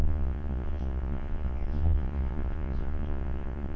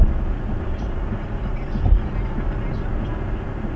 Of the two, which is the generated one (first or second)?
first